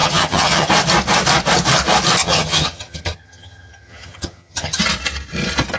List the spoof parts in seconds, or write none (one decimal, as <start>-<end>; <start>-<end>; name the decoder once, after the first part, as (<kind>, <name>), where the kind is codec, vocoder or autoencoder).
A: 0.0-0.7 (vocoder, HiFi-GAN); 2.2-4.8